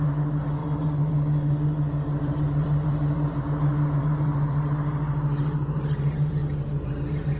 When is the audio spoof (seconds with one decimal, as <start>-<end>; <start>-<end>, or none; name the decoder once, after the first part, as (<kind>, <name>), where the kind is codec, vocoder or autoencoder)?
0.0-7.4 (vocoder, BigVGAN v2)